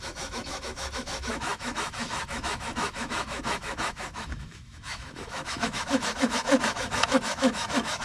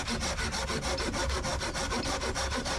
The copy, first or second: first